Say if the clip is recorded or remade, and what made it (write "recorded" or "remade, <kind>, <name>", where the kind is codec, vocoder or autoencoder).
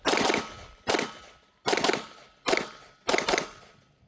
recorded